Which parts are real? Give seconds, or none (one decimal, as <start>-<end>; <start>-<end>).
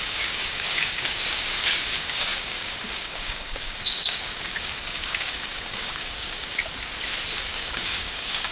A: 6.6-7.4